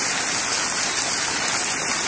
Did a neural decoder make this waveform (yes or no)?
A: no